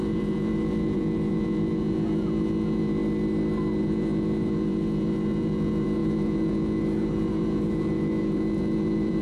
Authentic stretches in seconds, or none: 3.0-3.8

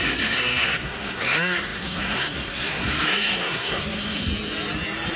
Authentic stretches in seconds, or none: 4.3-5.2